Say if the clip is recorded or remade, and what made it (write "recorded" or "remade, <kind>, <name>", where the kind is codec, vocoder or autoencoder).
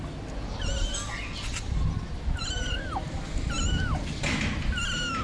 recorded